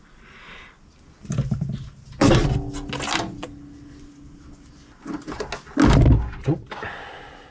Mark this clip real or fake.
real